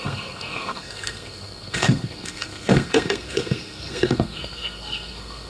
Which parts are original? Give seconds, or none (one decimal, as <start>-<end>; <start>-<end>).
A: none